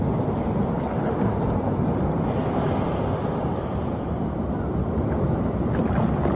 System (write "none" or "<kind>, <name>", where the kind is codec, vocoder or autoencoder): none